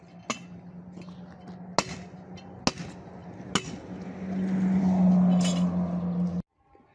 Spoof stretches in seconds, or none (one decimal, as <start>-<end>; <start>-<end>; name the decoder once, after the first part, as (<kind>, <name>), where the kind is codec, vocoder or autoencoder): none